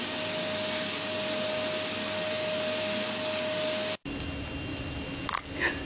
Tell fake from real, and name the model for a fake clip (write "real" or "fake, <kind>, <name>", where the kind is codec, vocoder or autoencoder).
real